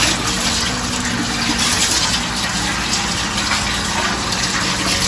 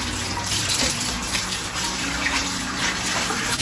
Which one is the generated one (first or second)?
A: second